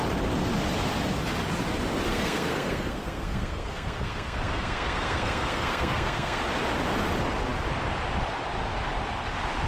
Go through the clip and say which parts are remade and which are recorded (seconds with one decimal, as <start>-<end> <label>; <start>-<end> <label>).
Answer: 0.0-2.1 recorded; 2.1-6.4 remade; 6.4-9.7 recorded